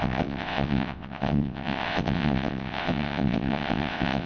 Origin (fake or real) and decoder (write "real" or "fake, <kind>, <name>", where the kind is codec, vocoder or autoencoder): fake, vocoder, WaveNeXt